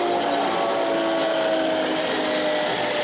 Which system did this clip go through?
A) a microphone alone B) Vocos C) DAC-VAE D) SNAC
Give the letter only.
A